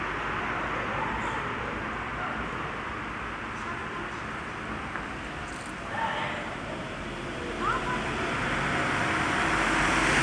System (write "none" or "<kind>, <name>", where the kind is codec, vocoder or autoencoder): none